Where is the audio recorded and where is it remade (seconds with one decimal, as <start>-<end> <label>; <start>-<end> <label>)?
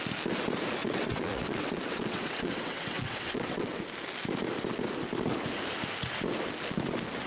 0.0-0.8 recorded; 0.8-3.8 remade; 3.8-7.3 recorded